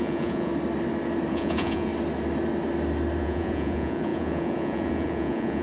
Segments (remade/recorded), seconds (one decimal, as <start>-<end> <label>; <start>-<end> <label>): 0.0-0.5 remade; 0.5-1.3 recorded; 1.3-1.9 remade; 1.9-3.2 recorded; 3.2-5.6 remade